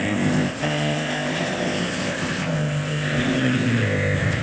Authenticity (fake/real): fake